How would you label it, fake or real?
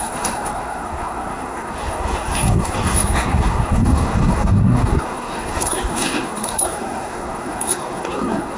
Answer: fake